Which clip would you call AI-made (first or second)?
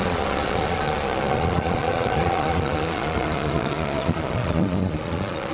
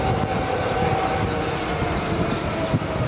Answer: first